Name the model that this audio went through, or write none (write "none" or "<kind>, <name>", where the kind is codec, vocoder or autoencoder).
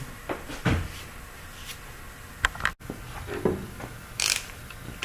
none